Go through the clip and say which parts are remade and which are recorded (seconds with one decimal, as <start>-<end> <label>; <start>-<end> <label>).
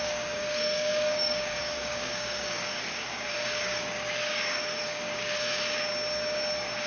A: 0.0-5.9 remade; 5.9-6.9 recorded